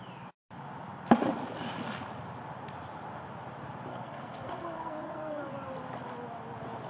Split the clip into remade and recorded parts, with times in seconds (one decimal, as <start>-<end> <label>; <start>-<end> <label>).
0.0-3.9 recorded; 3.9-5.4 remade; 5.4-6.9 recorded